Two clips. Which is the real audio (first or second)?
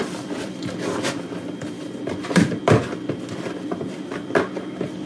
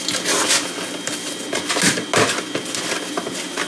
second